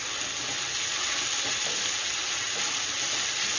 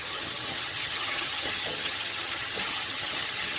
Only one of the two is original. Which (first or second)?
first